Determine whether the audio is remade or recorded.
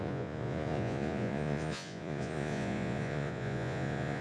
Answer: remade